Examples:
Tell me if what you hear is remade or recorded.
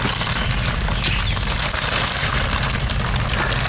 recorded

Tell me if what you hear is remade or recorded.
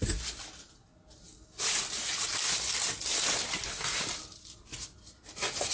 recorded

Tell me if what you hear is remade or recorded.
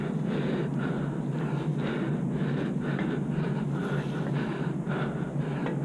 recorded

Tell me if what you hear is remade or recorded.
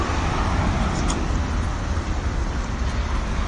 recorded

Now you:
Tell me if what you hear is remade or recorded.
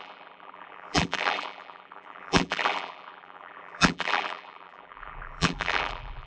remade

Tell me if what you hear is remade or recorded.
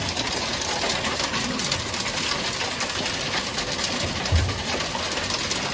recorded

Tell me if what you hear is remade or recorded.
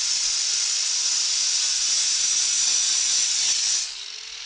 recorded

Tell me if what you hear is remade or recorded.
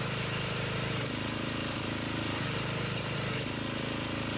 remade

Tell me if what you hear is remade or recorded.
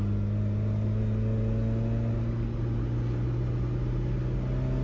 recorded